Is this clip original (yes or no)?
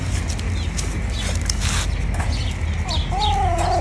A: yes